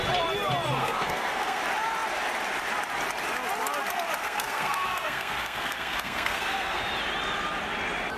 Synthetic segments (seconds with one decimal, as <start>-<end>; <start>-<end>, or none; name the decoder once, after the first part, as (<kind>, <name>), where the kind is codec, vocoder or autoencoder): 0.8-1.6 (codec, SNAC); 4.2-6.8